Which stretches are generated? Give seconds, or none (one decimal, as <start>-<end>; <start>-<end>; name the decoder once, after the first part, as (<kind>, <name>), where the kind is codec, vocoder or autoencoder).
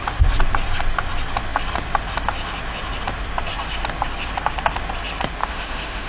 5.4-6.1 (autoencoder, DAC-VAE)